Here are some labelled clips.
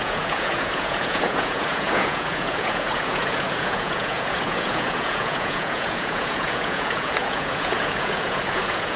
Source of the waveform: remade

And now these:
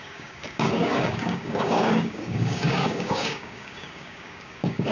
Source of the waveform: remade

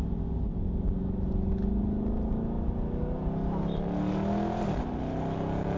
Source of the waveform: recorded